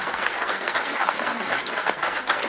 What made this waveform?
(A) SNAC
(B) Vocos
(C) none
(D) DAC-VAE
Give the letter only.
A